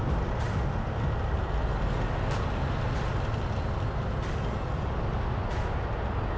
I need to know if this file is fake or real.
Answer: real